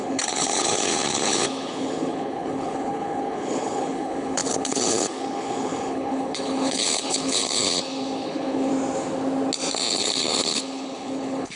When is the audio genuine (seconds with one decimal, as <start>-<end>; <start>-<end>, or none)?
8.7-9.9